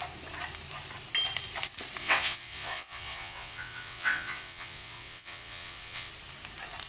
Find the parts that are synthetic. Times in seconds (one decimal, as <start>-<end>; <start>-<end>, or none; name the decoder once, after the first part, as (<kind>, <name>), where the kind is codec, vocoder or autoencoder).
2.0-6.1 (vocoder, WaveNeXt)